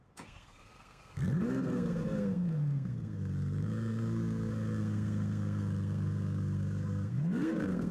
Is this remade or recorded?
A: remade